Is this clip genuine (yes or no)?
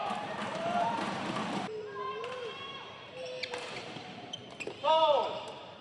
no